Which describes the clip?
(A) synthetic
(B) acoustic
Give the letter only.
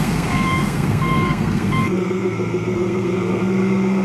A